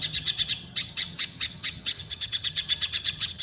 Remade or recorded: remade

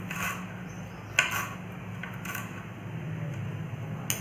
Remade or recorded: recorded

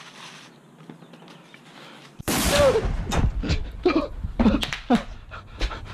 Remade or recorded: recorded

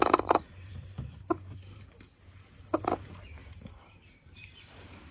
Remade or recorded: remade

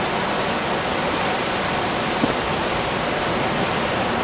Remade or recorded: recorded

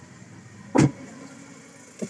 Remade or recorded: recorded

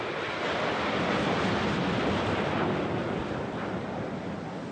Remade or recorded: remade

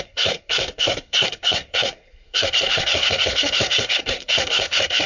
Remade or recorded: remade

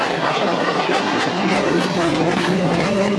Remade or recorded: remade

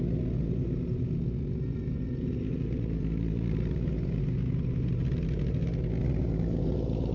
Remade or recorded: recorded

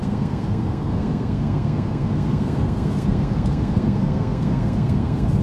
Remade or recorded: remade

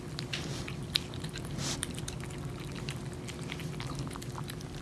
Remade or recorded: remade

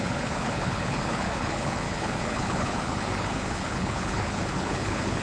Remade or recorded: remade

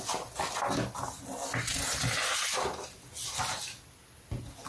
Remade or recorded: recorded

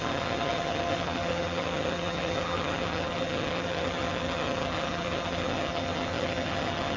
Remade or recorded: remade